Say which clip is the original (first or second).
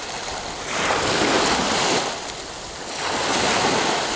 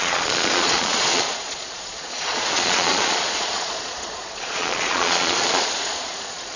first